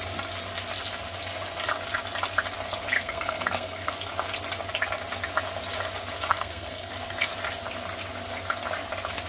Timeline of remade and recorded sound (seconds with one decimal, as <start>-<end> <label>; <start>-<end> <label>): 0.0-2.9 recorded; 2.9-3.9 remade; 3.9-6.3 recorded; 6.3-6.9 remade; 6.9-9.3 recorded